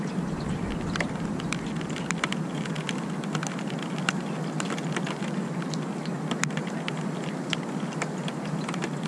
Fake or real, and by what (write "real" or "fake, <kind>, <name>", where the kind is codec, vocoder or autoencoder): real